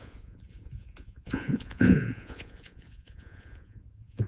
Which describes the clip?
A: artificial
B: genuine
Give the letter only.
A